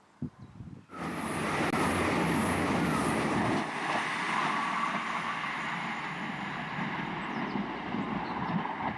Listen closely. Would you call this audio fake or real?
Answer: real